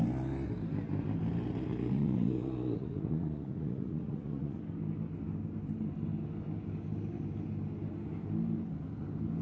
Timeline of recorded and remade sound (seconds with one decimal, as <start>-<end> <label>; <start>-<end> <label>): 0.0-1.7 recorded; 1.7-4.6 remade; 4.6-9.4 recorded